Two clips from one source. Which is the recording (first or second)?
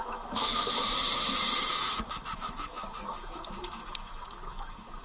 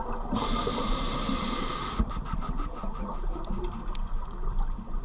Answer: second